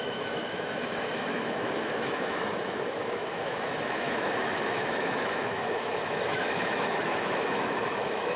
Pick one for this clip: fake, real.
fake